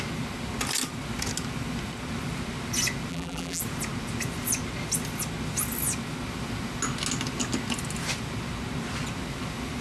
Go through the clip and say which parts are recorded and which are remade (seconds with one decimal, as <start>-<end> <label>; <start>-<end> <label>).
0.0-3.1 recorded; 3.1-3.6 remade; 3.6-9.8 recorded